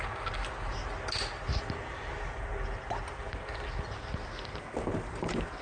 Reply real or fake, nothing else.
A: real